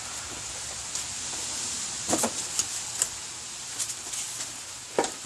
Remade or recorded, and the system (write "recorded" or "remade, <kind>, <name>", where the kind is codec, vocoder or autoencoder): recorded